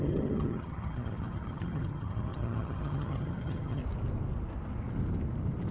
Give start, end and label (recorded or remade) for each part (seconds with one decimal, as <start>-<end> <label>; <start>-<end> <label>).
0.0-3.8 remade; 3.8-5.7 recorded